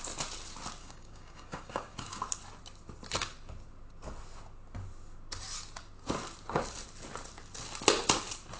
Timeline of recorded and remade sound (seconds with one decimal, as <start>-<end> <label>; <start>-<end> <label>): 0.0-0.8 recorded; 0.8-2.2 remade; 2.2-8.6 recorded